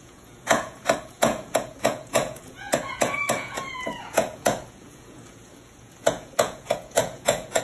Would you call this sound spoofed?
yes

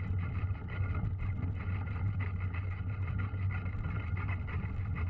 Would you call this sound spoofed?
no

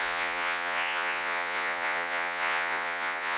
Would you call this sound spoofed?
yes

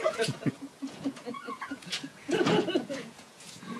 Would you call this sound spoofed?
yes